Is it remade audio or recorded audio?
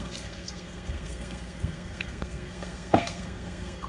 remade